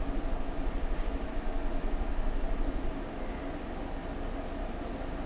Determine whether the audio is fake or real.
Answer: real